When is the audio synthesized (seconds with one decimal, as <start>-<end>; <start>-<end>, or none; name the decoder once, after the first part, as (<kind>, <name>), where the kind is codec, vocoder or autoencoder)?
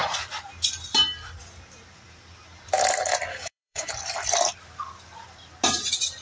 3.3-3.9 (codec, DAC)